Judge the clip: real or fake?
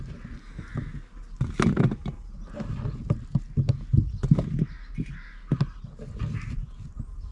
real